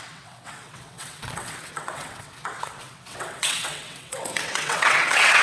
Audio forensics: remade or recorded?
remade